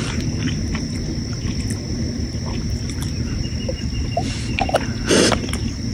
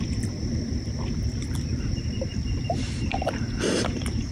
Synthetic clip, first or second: second